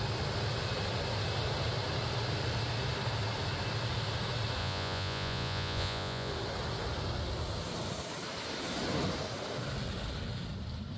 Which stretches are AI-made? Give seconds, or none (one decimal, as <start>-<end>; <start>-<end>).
4.6-6.3